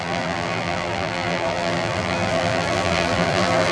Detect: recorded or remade remade